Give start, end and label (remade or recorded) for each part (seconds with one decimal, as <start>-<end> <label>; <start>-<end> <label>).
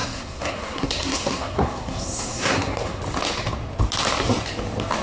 0.0-3.0 remade; 3.0-5.0 recorded